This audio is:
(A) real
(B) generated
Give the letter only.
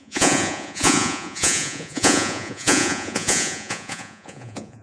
B